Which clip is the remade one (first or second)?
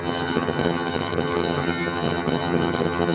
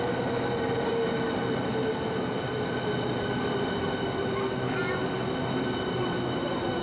first